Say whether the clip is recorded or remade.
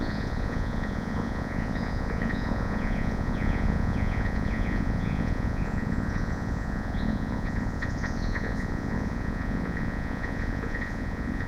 remade